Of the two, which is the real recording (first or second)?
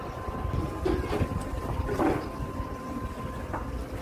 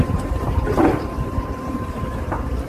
first